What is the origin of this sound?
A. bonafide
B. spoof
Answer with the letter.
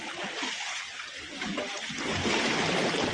A